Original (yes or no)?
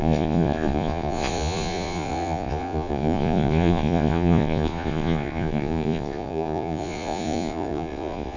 no